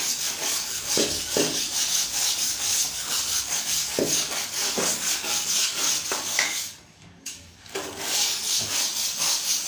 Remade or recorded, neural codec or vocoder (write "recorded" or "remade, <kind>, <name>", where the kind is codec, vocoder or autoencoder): remade, codec, DAC